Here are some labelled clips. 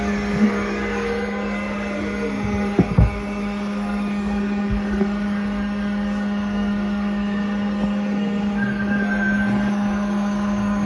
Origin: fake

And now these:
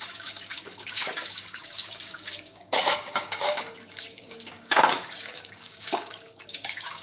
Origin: fake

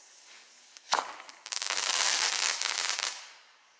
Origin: fake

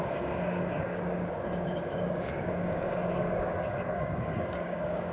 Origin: fake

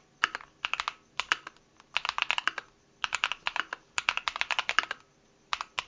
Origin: real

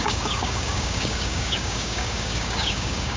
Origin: fake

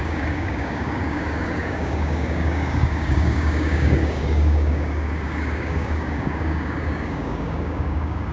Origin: fake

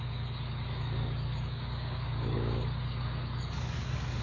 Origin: fake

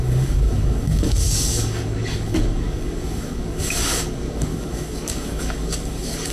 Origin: fake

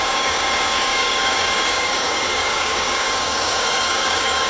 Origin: fake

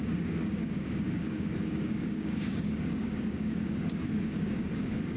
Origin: fake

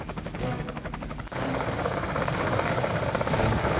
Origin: fake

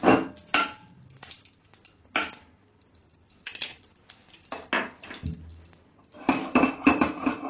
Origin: real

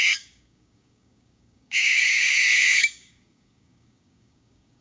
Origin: fake